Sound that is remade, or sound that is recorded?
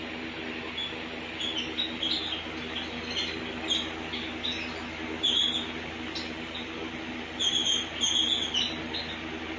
recorded